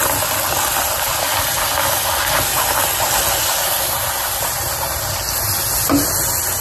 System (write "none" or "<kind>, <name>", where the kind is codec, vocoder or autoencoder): none